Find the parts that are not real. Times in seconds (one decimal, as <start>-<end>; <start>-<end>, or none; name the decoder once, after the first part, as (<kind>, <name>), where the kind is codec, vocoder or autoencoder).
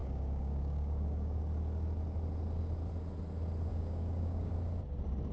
0.0-1.4 (codec, DAC); 3.7-4.5